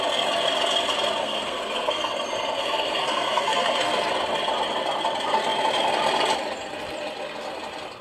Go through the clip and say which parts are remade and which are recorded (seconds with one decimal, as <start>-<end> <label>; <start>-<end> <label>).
0.0-1.2 recorded; 1.2-2.1 remade; 2.1-2.6 recorded; 2.6-4.1 remade; 4.1-8.0 recorded